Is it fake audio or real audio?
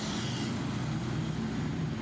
real